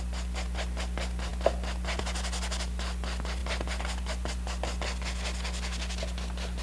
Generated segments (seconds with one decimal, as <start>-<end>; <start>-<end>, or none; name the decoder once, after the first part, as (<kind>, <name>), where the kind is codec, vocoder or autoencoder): none